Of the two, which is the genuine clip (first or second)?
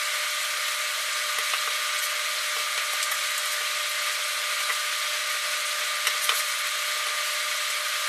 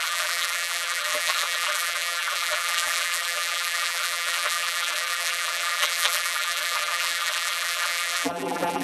first